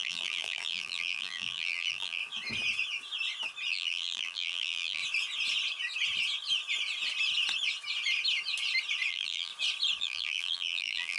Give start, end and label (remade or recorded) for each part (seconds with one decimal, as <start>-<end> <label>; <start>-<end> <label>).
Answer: 0.0-2.2 remade; 2.2-3.7 recorded; 3.7-5.0 remade; 5.0-9.1 recorded; 9.1-9.5 remade; 9.5-10.0 recorded; 10.0-11.2 remade